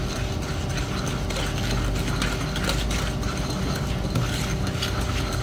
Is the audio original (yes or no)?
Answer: yes